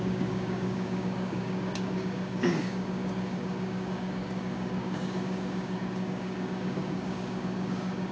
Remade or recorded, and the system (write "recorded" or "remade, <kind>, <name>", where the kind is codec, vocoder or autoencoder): remade, codec, DAC